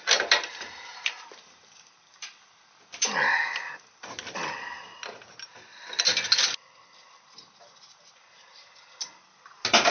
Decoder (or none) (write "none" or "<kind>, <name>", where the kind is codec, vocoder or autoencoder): none